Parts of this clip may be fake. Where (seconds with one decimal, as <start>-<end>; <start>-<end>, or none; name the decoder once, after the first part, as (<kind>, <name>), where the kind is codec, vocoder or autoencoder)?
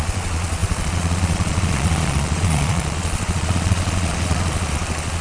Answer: 0.0-5.2 (vocoder, Vocos)